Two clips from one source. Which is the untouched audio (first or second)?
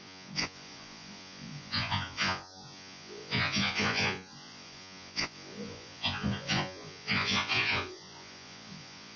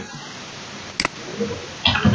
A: second